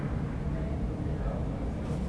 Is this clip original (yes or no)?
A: yes